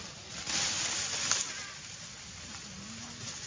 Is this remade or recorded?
recorded